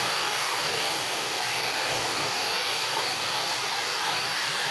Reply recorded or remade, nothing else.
remade